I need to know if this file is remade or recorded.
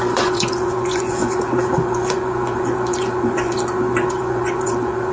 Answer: remade